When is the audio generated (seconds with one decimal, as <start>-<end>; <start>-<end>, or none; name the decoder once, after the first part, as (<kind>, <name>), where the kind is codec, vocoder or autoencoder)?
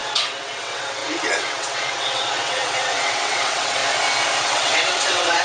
0.0-3.8 (vocoder, WaveNeXt); 4.4-5.4